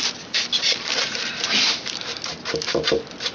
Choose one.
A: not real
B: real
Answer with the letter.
B